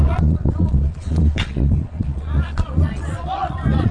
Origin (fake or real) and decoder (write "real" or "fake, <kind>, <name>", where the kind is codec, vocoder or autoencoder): fake, vocoder, Vocos